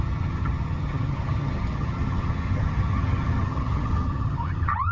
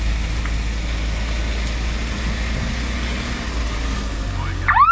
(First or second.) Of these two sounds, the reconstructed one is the first